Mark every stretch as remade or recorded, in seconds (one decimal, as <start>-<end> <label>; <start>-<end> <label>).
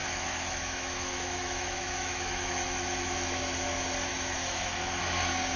0.0-3.4 remade; 3.4-4.1 recorded; 4.1-5.0 remade; 5.0-5.6 recorded